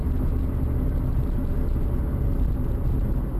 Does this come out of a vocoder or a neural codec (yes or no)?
no